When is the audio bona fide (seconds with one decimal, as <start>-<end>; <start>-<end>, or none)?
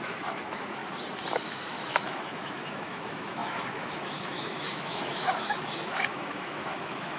0.8-1.4